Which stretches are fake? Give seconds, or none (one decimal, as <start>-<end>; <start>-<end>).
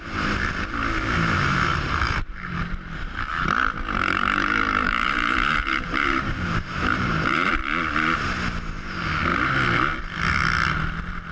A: 1.7-2.6; 3.3-7.5